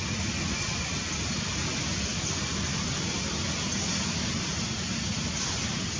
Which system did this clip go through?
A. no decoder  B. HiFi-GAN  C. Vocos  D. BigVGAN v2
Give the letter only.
A